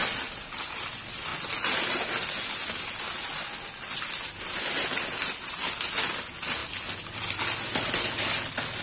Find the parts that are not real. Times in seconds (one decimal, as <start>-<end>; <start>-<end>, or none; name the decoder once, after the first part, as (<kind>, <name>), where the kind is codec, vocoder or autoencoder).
none